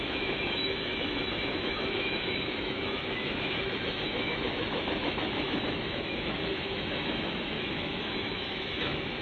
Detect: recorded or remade remade